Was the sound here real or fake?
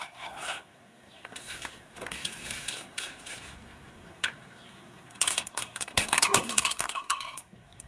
fake